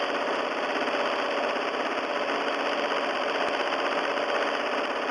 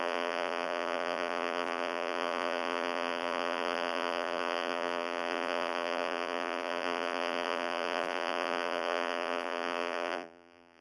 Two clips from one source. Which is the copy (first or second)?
second